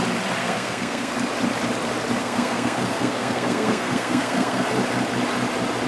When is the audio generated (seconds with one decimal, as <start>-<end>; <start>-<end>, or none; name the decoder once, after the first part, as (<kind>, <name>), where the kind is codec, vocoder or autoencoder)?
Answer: 0.4-1.1 (codec, SNAC); 2.2-4.7